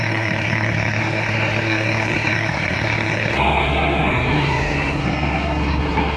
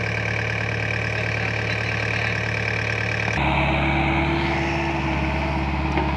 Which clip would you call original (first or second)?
second